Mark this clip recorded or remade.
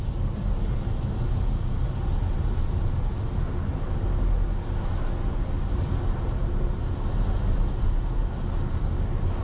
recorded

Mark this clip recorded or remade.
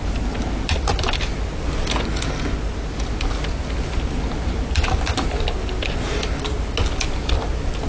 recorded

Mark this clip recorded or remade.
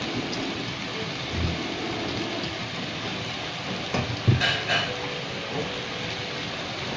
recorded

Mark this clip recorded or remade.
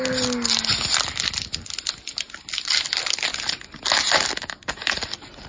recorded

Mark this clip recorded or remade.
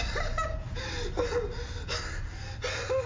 recorded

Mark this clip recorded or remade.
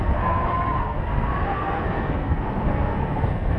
remade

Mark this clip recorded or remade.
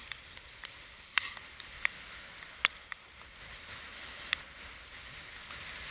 recorded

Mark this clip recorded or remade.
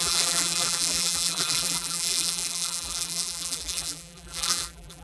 remade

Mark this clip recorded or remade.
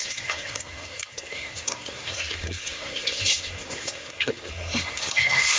remade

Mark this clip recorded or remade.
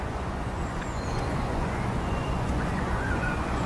remade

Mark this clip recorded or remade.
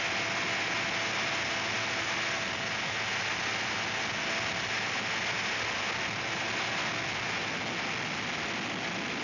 recorded